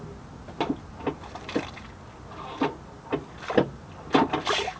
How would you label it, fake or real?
real